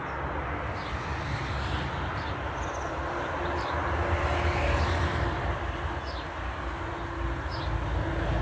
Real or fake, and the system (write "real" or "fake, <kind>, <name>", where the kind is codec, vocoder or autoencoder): real